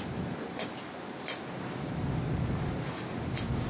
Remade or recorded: recorded